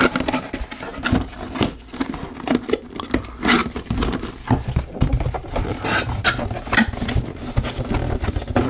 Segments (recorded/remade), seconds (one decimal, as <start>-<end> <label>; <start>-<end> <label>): 0.0-8.7 recorded